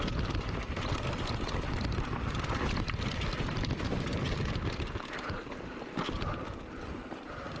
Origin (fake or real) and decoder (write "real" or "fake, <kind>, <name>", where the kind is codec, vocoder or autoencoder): real